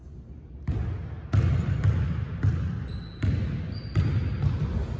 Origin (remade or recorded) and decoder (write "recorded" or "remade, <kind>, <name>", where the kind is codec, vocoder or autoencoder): recorded